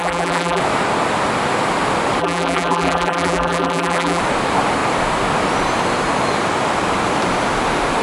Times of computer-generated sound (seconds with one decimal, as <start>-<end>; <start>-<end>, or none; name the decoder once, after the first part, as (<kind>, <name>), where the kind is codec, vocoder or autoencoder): 0.0-0.6 (vocoder, BigVGAN v2); 2.2-4.2